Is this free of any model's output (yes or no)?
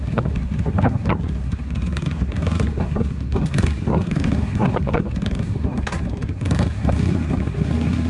no